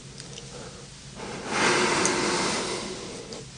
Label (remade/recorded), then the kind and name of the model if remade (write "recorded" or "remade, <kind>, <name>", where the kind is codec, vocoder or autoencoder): recorded